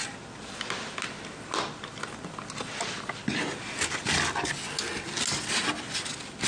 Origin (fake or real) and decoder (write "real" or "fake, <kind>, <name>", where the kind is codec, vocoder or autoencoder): real